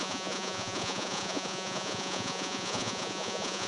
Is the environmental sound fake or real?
fake